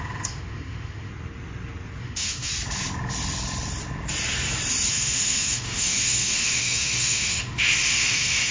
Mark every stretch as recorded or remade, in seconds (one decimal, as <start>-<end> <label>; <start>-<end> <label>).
0.0-1.1 remade; 1.1-2.0 recorded; 2.0-2.5 remade; 2.5-4.9 recorded; 4.9-8.5 remade